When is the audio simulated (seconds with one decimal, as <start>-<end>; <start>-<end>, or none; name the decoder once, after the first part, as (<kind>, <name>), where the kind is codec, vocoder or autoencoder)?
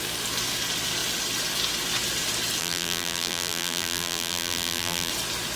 2.6-5.1 (vocoder, BigVGAN v2)